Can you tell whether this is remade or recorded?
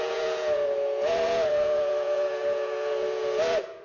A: remade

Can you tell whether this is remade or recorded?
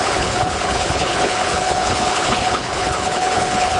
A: remade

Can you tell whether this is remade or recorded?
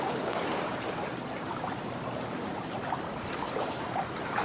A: recorded